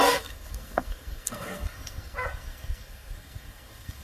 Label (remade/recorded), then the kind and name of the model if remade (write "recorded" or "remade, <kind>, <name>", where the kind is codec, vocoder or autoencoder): remade, codec, SNAC